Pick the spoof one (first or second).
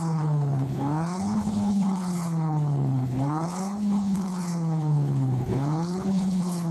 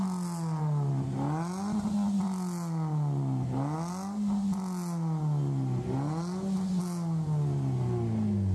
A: first